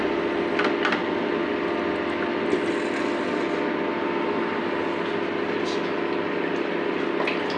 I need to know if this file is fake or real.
real